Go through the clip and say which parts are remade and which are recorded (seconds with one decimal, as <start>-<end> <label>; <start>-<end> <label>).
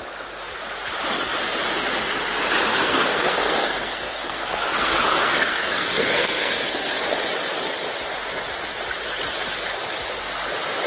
0.0-2.7 recorded; 2.7-7.0 remade; 7.0-10.9 recorded